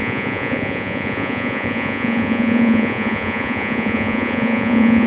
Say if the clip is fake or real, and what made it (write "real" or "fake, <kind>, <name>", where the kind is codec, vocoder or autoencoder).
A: fake, vocoder, Vocos